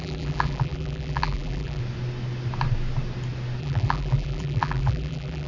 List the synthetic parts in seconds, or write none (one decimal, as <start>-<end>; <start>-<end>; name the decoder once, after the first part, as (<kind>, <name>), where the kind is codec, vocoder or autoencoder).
0.0-1.8 (vocoder, BigVGAN v2); 3.6-5.5

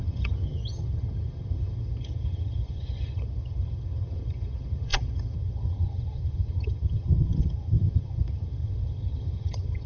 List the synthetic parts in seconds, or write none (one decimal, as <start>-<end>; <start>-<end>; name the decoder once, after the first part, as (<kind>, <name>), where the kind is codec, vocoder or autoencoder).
0.0-9.9 (vocoder, HiFi-GAN)

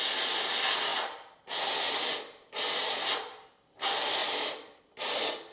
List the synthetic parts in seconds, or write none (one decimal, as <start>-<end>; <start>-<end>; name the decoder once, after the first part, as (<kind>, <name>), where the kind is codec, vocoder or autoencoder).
0.9-1.4 (vocoder, BigVGAN v2)

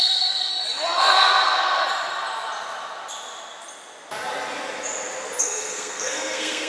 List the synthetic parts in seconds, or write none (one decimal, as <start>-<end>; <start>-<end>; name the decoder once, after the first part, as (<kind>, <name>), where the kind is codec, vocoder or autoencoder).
0.0-0.5 (codec, SNAC); 1.0-1.8; 5.4-6.7

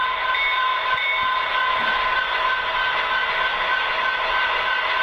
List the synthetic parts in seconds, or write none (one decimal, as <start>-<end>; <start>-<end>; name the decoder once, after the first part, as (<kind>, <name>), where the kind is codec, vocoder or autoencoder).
none

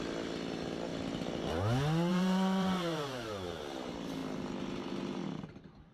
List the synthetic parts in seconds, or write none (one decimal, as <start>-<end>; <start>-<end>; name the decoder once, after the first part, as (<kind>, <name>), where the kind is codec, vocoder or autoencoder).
2.1-3.6 (vocoder, BigVGAN v2)

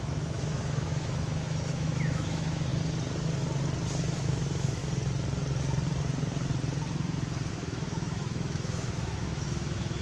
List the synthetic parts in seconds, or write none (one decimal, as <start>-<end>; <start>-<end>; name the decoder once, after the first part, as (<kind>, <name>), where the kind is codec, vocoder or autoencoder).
0.0-2.7 (autoencoder, DAC-VAE); 4.2-4.8; 7.5-10.0

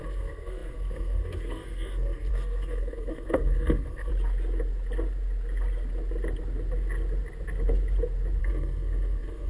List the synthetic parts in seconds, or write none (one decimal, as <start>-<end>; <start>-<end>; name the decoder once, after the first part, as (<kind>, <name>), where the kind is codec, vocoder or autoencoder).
0.0-4.1 (codec, SNAC); 8.4-9.5